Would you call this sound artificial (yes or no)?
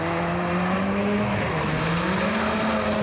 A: no